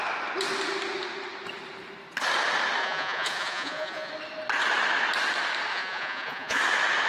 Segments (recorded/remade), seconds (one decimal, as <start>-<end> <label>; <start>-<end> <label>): 0.0-2.8 recorded; 2.8-4.1 remade; 4.1-5.7 recorded; 5.7-6.6 remade; 6.6-7.1 recorded